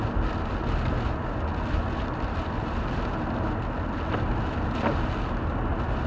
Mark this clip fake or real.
real